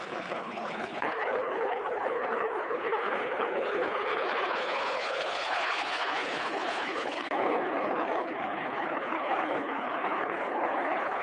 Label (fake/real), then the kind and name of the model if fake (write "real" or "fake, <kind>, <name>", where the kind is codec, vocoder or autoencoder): fake, codec, HILCodec